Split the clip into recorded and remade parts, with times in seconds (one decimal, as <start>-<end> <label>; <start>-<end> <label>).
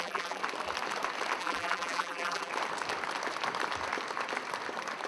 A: 0.0-0.4 remade; 0.4-1.4 recorded; 1.4-2.5 remade; 2.5-5.1 recorded